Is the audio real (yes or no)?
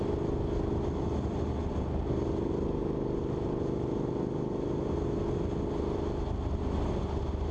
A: yes